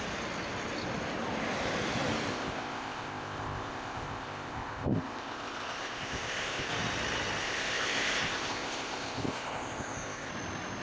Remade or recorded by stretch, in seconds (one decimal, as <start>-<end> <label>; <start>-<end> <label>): 0.0-2.3 recorded; 2.3-6.7 remade; 6.7-7.4 recorded; 7.4-10.3 remade; 10.3-10.8 recorded